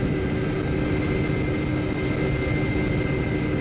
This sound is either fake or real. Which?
real